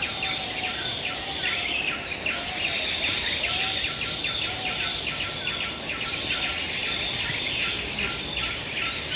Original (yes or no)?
yes